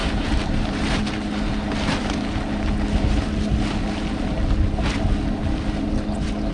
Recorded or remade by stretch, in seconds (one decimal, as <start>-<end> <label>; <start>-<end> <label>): 0.0-1.0 remade; 1.0-6.5 recorded